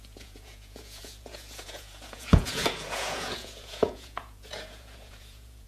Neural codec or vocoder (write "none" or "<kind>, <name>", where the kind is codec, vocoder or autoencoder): vocoder, Vocos